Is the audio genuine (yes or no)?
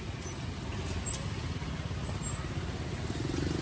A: yes